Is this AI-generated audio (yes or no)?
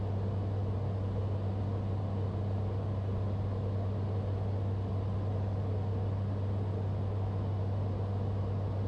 no